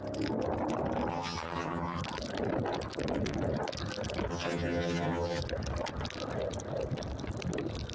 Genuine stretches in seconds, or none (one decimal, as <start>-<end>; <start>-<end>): 0.0-1.1; 2.0-4.3; 5.4-7.9